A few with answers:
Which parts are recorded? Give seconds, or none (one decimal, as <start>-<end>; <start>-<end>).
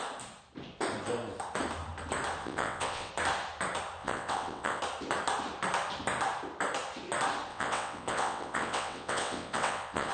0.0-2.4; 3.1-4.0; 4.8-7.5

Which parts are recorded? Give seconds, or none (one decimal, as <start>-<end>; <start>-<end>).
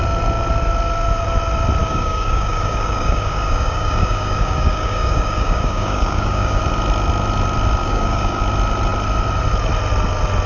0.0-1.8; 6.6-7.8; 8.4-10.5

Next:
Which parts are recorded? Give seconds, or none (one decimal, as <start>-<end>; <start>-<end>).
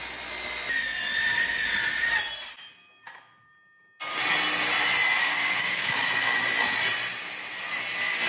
0.0-5.2; 6.1-8.3